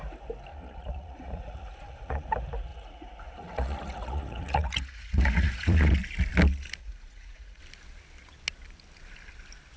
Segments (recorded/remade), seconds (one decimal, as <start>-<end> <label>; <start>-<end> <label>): 0.0-0.5 recorded; 0.5-2.3 remade; 2.3-2.7 recorded; 2.7-5.9 remade; 5.9-6.8 recorded; 6.8-7.6 remade; 7.6-9.8 recorded